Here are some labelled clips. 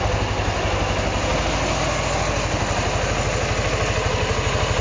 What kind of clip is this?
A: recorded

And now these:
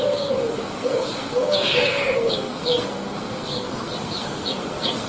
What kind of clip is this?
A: remade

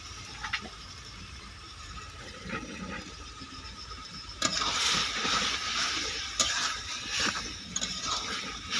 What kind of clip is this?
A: remade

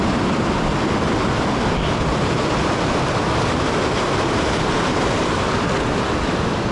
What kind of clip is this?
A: recorded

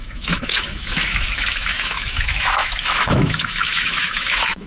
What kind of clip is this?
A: remade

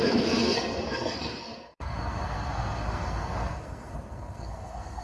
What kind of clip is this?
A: remade